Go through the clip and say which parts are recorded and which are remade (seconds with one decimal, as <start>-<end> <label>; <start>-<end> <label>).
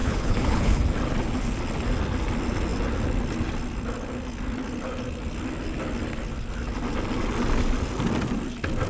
0.0-0.8 remade; 0.8-8.9 recorded